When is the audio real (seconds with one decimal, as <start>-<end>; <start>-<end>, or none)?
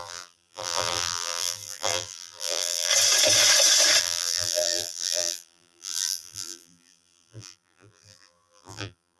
2.9-4.0